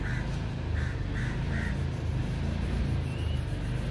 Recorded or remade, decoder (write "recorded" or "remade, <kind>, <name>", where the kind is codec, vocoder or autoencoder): recorded